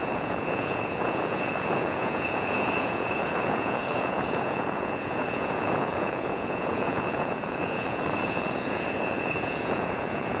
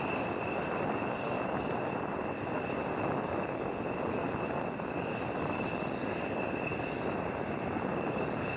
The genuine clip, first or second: second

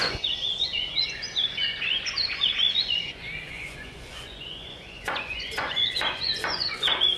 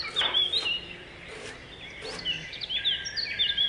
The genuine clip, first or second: second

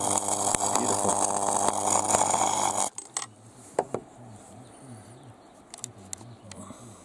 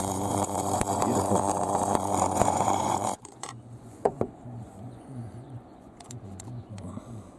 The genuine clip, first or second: first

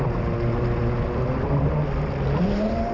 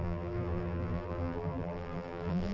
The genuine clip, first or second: first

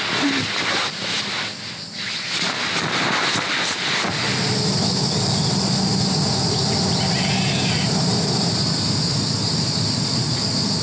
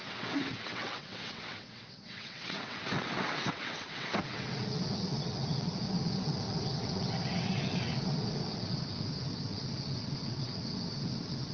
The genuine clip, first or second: first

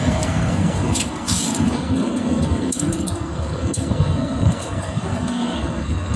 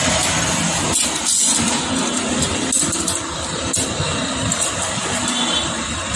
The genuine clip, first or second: second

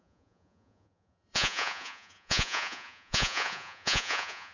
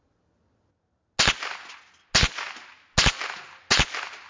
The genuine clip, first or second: second